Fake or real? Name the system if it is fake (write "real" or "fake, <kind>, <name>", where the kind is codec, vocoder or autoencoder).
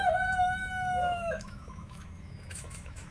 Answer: fake, autoencoder, DAC-VAE